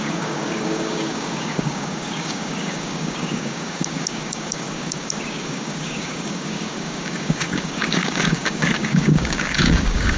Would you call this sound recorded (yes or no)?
no